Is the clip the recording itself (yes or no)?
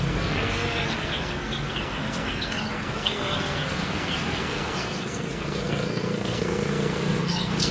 no